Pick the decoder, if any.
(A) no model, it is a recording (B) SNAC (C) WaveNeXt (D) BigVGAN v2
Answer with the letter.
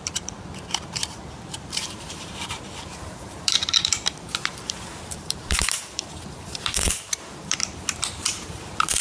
D